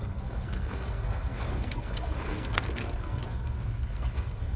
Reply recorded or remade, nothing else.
remade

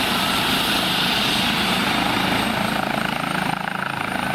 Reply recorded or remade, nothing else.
recorded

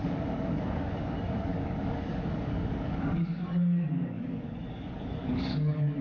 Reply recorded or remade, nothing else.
remade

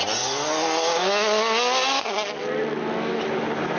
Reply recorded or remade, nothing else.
recorded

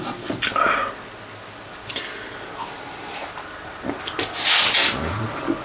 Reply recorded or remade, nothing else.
recorded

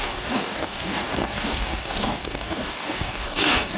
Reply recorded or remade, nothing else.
remade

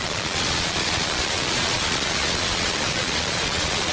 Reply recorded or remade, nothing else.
remade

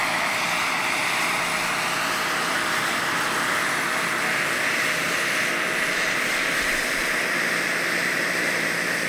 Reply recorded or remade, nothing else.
remade